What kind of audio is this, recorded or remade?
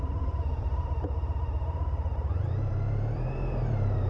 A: remade